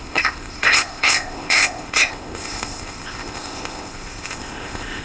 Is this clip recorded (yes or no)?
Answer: no